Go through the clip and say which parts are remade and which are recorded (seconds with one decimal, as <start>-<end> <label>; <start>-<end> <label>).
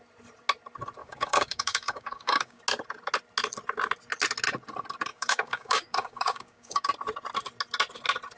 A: 0.0-1.0 recorded; 1.0-2.6 remade; 2.6-5.1 recorded; 5.1-6.9 remade; 6.9-8.4 recorded